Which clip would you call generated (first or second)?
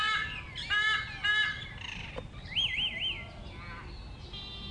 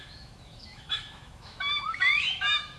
second